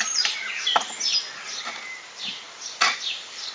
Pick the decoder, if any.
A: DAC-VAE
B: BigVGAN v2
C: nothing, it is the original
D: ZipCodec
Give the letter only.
B